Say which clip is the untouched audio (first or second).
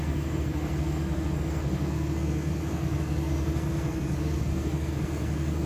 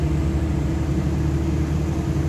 second